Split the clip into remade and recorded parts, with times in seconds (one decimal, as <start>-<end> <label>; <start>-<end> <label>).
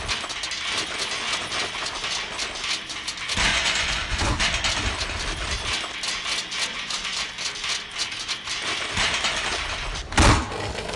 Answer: 0.0-3.5 recorded; 3.5-4.4 remade; 4.4-6.7 recorded; 6.7-7.3 remade; 7.3-11.0 recorded